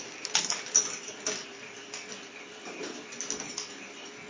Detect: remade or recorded recorded